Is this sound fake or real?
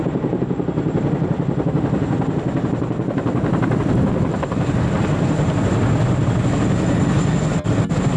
real